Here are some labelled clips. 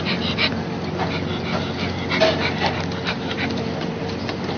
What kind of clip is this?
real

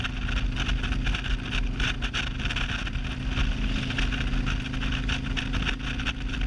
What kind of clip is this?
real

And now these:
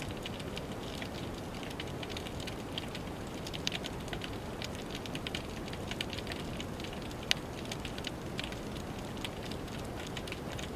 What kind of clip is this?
real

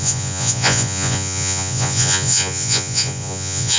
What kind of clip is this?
fake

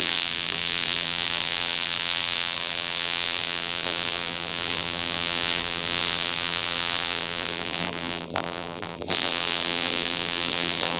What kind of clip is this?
fake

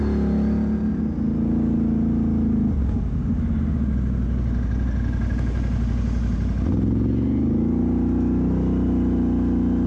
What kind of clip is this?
real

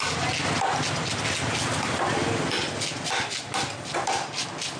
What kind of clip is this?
real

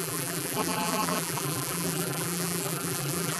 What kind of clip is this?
fake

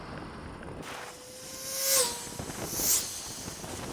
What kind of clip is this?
real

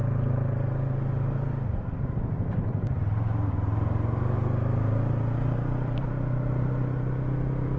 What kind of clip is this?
real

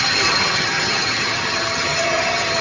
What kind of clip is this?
fake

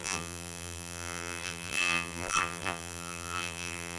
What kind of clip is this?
fake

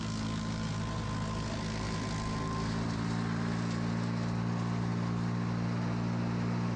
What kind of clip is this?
real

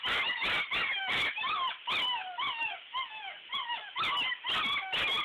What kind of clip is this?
real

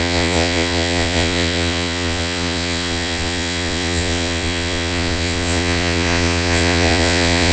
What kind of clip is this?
fake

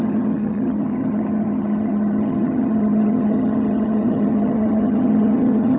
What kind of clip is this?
fake